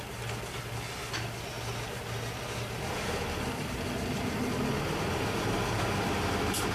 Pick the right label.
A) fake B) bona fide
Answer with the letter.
B